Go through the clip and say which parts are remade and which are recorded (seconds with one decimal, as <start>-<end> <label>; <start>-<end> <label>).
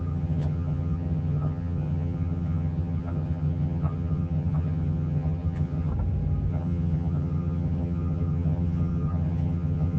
0.0-5.9 remade; 5.9-6.5 recorded; 6.5-10.0 remade